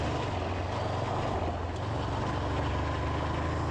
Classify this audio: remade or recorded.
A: recorded